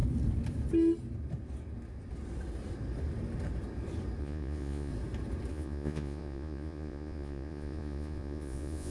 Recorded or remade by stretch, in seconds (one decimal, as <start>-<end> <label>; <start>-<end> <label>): 0.0-4.2 recorded; 4.2-4.9 remade; 4.9-5.5 recorded; 5.5-8.9 remade